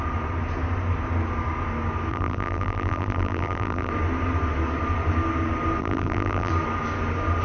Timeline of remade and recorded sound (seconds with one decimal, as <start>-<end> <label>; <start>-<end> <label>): 0.0-2.1 recorded; 2.1-3.9 remade; 3.9-5.8 recorded; 5.8-6.5 remade; 6.5-7.4 recorded